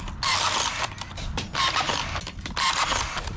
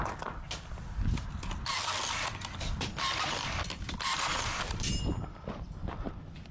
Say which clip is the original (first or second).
first